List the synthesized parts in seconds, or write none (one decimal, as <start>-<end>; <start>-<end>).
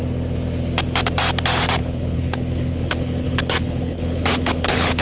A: 1.8-5.0